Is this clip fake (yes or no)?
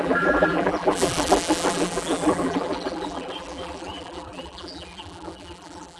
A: yes